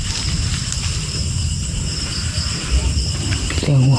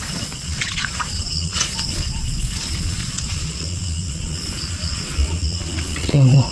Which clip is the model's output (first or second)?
second